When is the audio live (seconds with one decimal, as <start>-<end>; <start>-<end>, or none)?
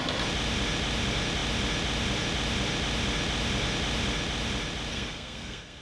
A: 0.0-4.9